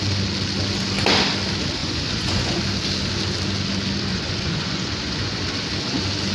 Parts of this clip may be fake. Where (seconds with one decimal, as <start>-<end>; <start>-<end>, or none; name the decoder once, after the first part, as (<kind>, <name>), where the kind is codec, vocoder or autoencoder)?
1.8-2.7 (vocoder, Vocos); 4.1-5.4